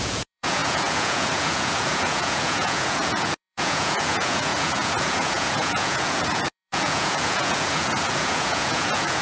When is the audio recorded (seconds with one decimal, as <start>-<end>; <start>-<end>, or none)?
none